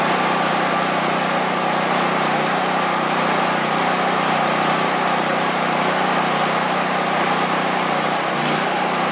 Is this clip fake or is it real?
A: real